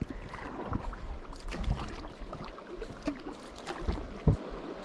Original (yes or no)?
yes